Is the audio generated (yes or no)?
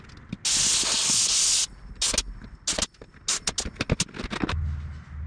no